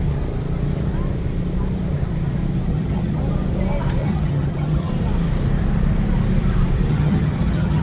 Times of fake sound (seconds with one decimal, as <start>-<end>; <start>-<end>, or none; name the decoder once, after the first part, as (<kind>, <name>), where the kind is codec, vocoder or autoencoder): 2.7-3.2 (vocoder, HiFi-GAN); 4.0-4.9; 6.9-7.8